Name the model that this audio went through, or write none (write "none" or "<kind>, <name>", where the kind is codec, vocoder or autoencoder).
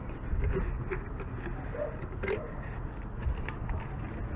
none